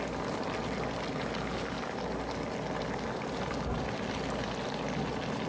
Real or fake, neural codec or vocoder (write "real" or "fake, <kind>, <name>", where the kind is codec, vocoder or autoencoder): real